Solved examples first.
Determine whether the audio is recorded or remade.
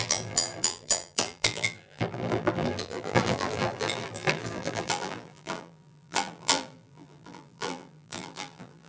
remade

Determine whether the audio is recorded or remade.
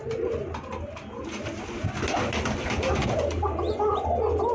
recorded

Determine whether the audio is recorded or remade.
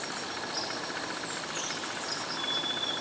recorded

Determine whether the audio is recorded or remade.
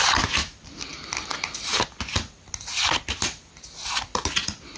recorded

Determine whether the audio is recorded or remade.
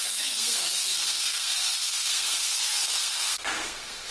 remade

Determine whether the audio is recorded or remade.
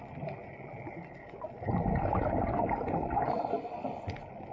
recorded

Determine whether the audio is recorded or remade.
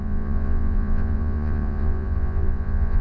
remade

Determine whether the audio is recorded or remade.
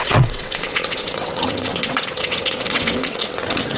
remade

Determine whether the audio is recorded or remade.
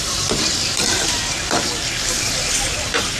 remade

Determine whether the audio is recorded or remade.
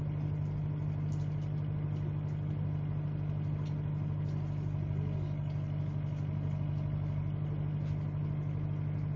recorded